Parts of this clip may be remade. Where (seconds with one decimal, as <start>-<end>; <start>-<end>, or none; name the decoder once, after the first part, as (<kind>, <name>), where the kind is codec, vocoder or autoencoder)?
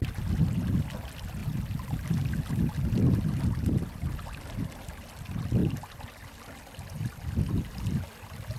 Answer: none